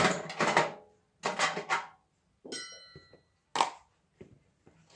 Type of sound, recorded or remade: recorded